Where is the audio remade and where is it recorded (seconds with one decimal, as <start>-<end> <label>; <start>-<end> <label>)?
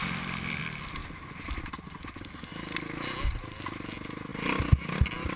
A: 0.0-0.6 remade; 0.6-5.4 recorded